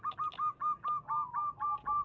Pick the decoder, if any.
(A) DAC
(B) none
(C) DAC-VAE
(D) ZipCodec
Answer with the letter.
B